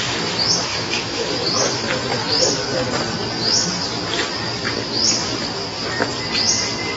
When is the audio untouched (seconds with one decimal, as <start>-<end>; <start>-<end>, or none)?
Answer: 0.0-0.7; 1.3-7.0